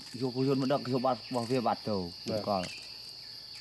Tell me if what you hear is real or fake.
real